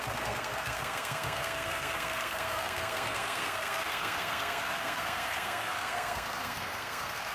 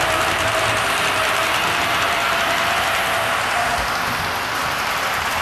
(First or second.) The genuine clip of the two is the second